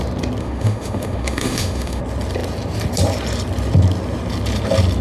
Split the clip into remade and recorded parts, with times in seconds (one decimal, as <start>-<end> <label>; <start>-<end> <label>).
0.0-0.4 recorded; 0.4-2.0 remade; 2.0-5.0 recorded